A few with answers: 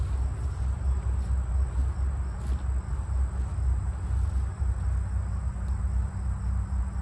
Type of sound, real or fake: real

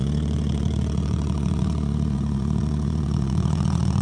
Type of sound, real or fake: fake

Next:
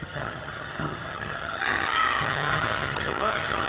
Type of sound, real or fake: fake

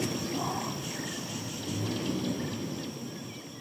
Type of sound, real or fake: real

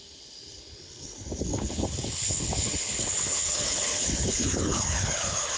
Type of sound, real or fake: fake